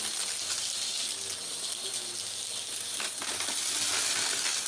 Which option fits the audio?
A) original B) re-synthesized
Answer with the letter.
A